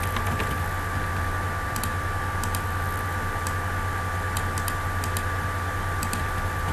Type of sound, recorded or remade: recorded